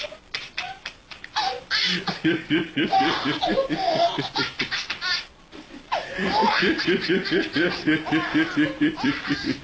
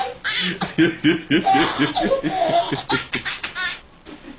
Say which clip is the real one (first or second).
second